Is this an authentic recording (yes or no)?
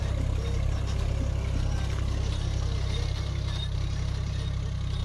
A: yes